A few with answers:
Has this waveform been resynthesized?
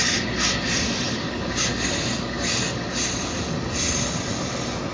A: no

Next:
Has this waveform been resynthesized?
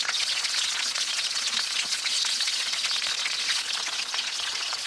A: yes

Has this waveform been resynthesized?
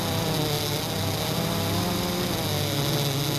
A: no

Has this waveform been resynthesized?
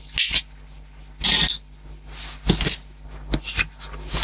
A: no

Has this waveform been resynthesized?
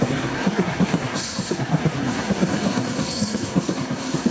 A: yes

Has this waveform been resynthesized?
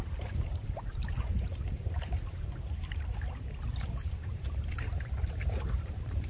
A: yes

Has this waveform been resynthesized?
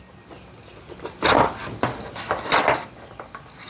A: no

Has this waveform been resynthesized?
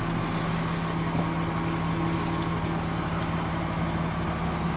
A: no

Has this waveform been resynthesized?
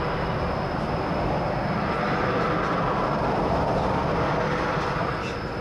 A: no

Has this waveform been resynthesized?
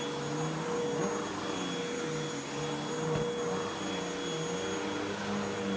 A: no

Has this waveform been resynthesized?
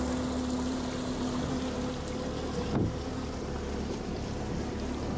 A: no